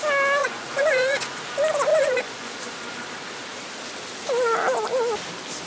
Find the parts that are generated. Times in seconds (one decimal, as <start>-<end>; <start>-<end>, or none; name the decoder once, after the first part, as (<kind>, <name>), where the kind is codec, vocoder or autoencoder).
0.4-1.4 (vocoder, Vocos); 1.9-2.7